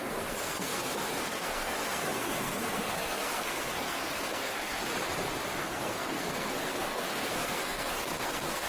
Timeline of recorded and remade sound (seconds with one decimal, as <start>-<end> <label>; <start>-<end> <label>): 0.0-4.8 remade; 4.8-5.6 recorded; 5.6-8.7 remade